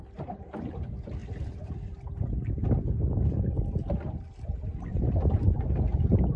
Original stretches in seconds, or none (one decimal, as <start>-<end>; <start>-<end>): 0.0-1.2; 1.7-4.9; 5.6-6.4